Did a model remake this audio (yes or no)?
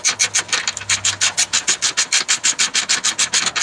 no